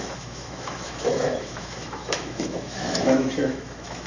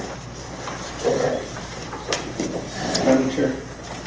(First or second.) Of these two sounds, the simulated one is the first